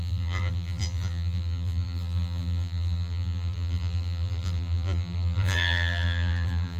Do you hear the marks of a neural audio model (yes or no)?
yes